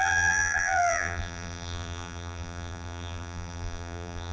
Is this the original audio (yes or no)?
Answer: no